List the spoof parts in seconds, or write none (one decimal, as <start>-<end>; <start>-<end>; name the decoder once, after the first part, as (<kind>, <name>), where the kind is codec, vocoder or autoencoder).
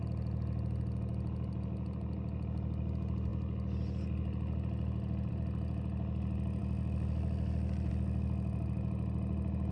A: none